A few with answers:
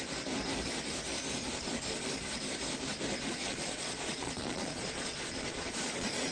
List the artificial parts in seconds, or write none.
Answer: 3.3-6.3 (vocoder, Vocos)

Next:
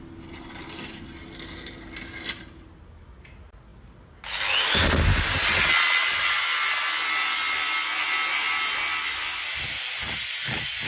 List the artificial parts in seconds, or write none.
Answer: none

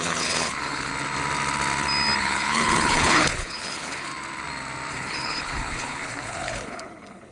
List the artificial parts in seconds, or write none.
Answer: 0.0-0.9 (codec, HILCodec); 2.2-4.1; 4.9-7.3

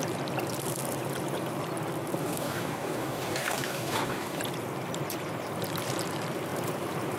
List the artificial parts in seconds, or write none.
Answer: 2.2-4.4 (codec, DAC)

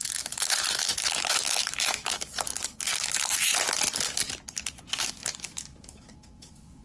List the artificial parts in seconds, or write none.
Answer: 0.0-3.5 (autoencoder, DAC-VAE); 4.7-6.8

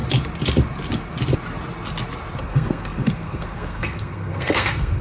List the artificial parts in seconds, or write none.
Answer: 2.4-5.0 (codec, SNAC)

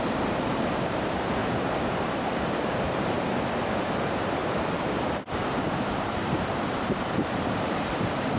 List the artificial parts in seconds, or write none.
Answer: 0.0-1.4 (vocoder, BigVGAN v2); 1.9-3.3; 4.1-8.4